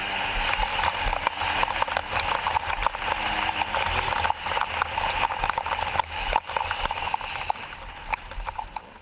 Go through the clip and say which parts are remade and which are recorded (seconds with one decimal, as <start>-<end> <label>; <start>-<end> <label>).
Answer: 0.0-9.0 recorded